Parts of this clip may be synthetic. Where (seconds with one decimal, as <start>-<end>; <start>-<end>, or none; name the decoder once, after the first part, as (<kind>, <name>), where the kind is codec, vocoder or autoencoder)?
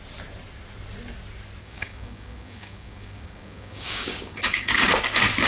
1.6-4.9 (codec, DAC)